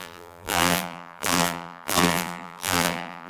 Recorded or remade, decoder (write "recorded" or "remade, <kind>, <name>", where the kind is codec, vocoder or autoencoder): remade, vocoder, BigVGAN v2